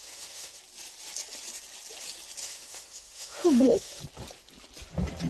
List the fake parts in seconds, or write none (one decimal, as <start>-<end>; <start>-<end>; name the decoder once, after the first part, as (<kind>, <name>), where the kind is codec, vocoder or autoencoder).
0.0-0.6 (autoencoder, DAC-VAE); 2.4-4.0